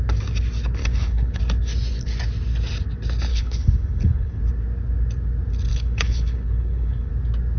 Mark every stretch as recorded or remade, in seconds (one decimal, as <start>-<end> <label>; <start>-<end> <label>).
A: 0.0-0.8 recorded; 0.8-1.4 remade; 1.4-3.3 recorded; 3.3-4.4 remade; 4.4-5.7 recorded; 5.7-7.1 remade; 7.1-7.6 recorded